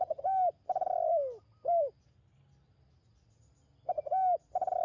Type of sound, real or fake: real